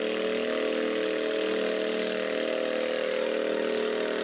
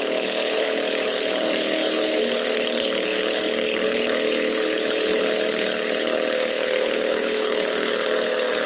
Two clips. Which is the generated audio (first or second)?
second